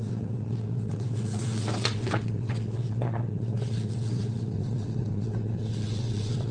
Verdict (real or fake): fake